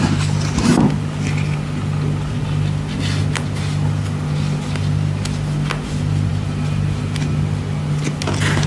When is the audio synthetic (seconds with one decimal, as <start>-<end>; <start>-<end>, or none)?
none